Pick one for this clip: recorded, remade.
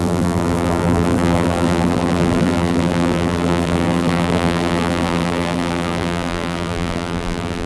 remade